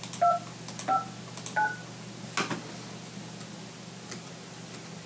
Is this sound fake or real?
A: real